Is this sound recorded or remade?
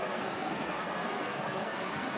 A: remade